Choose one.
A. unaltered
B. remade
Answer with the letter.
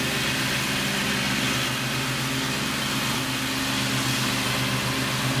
A